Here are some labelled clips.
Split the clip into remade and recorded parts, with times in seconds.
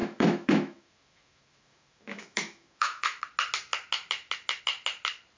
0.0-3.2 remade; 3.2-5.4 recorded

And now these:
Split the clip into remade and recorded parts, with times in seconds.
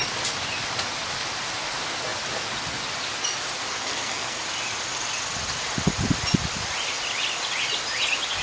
0.0-3.7 recorded; 3.7-4.4 remade; 4.4-8.4 recorded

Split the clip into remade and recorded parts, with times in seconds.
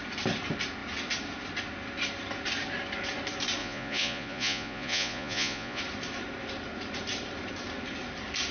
0.0-3.6 recorded; 3.6-5.8 remade; 5.8-8.5 recorded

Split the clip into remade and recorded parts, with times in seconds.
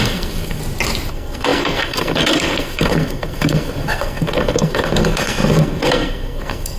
0.0-0.6 remade; 0.6-1.1 recorded; 1.1-6.8 remade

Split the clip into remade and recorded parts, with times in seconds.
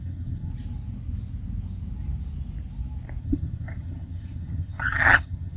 0.0-0.5 remade; 0.5-3.2 recorded; 3.2-5.6 remade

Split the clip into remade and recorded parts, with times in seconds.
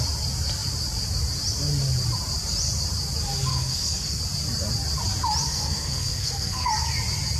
0.0-3.5 recorded; 3.5-4.2 remade; 4.2-5.5 recorded; 5.5-6.7 remade; 6.7-7.4 recorded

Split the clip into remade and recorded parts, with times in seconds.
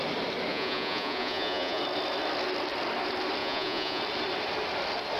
0.0-0.5 recorded; 0.5-1.8 remade; 1.8-3.4 recorded; 3.4-4.0 remade; 4.0-5.2 recorded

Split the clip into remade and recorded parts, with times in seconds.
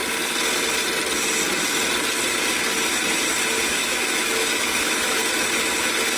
0.0-3.7 recorded; 3.7-5.2 remade; 5.2-6.2 recorded